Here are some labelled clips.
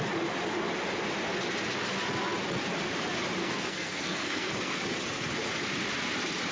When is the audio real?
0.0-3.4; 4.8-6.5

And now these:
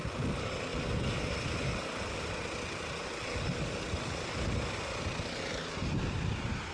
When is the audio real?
0.0-5.5; 6.1-6.7

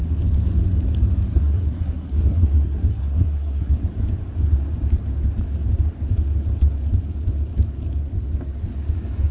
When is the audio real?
0.0-1.3; 3.7-9.3

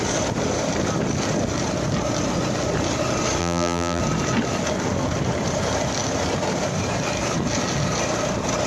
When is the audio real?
0.0-3.4; 4.0-8.7

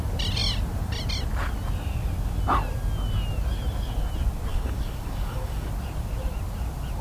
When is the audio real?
0.0-4.5; 5.7-7.0

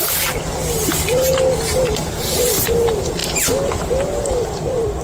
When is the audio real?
0.0-5.0

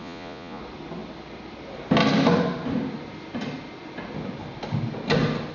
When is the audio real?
0.6-5.5

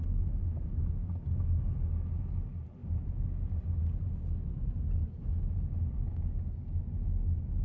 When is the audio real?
0.0-2.8; 3.8-7.6